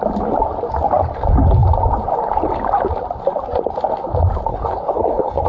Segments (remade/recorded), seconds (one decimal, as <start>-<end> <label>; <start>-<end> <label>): 0.0-4.5 recorded; 4.5-5.5 remade